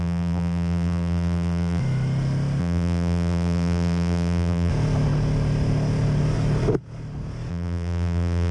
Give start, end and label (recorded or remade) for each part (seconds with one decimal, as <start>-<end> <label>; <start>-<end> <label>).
0.0-1.8 remade; 1.8-2.6 recorded; 2.6-4.7 remade; 4.7-7.5 recorded; 7.5-8.5 remade